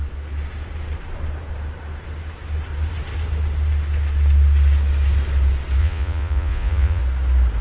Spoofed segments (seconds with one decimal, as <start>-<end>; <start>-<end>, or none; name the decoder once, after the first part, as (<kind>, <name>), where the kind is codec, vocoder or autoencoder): 5.8-7.0 (vocoder, Vocos)